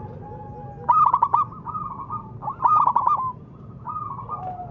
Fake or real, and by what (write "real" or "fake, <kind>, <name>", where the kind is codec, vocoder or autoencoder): fake, vocoder, BigVGAN v2